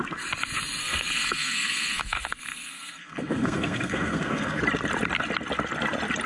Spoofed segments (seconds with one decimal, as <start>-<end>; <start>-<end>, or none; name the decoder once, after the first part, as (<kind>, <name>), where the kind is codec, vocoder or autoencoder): 0.8-4.6 (codec, SNAC)